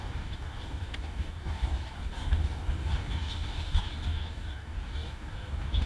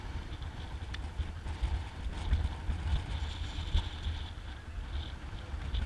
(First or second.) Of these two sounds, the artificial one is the first